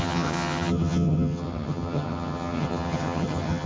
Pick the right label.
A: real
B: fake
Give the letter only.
B